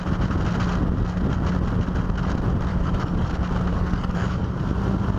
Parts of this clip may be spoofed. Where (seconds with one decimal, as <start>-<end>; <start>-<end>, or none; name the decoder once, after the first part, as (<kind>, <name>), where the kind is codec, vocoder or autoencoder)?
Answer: 2.7-3.3 (codec, DAC); 3.7-4.5